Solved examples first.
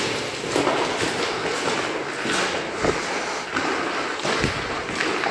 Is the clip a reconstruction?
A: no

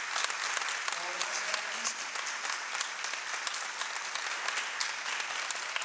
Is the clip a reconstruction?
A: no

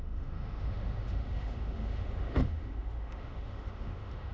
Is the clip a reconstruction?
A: yes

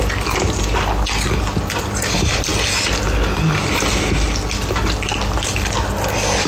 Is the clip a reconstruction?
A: no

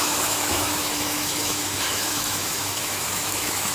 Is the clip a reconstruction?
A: yes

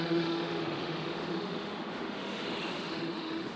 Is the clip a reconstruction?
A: yes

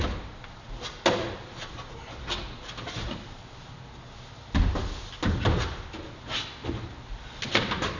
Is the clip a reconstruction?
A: no